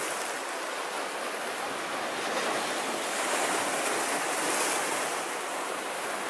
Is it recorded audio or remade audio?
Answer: recorded